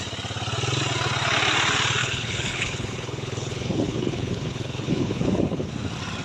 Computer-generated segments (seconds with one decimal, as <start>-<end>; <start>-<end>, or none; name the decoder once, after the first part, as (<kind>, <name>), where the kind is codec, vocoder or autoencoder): 2.0-5.7 (codec, HILCodec)